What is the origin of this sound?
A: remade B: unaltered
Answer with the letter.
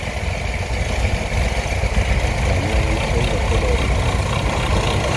B